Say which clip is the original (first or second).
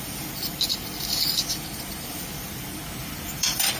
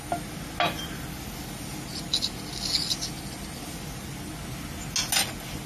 second